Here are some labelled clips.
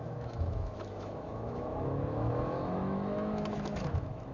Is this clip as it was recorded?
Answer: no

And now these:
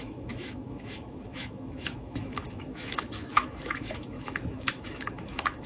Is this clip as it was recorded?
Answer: no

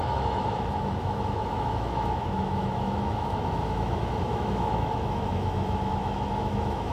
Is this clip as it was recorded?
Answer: no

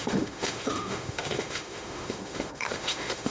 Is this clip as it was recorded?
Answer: no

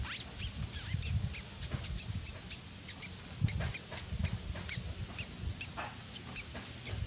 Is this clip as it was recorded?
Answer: yes